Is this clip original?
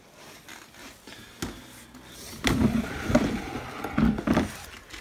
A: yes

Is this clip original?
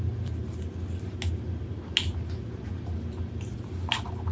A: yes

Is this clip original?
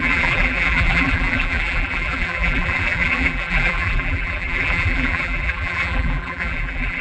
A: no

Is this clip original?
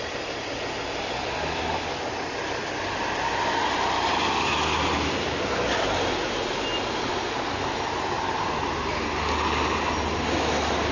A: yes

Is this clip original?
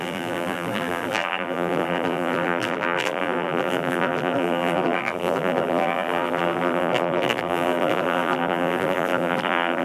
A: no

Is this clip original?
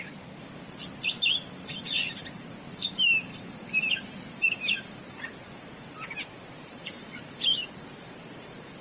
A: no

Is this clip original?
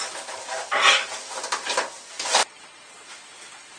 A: yes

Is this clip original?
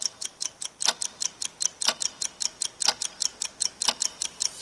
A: no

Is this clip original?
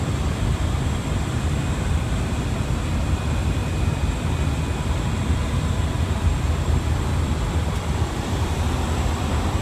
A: no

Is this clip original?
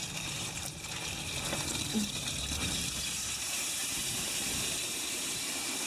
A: no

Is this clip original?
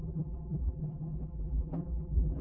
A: no